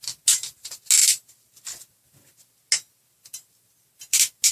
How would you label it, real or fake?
real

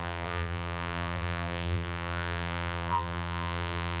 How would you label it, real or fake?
fake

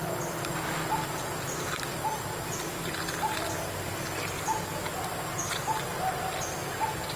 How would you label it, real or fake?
real